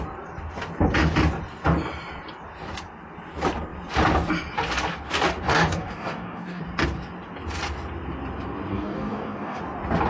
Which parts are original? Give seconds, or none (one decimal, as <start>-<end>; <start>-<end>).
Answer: 0.0-5.5; 6.6-8.7; 9.6-10.1

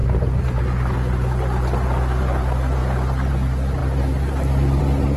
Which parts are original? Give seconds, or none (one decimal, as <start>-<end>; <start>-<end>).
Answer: 0.0-5.2

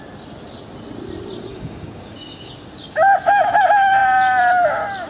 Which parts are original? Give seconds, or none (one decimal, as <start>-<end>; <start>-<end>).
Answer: 0.0-1.5; 2.5-5.1

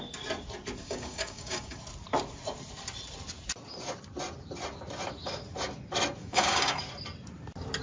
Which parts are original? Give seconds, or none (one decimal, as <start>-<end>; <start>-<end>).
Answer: 0.0-0.8; 1.8-6.2; 6.8-7.8

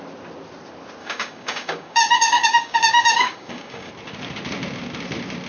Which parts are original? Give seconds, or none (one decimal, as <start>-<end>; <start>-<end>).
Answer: 0.0-1.0; 3.9-5.5

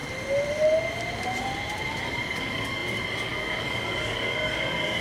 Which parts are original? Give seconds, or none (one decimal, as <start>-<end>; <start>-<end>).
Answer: 0.0-1.9